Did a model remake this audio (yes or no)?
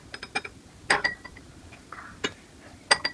no